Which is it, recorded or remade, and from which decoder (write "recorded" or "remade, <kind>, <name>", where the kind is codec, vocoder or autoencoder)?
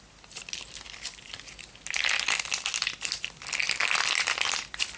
recorded